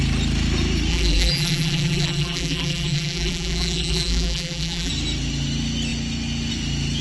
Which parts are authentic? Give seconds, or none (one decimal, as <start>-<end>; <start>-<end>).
0.0-0.9; 4.9-7.0